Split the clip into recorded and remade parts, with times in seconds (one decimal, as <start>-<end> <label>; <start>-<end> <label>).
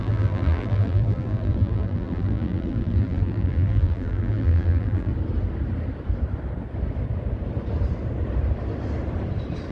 0.0-5.1 remade; 5.1-9.7 recorded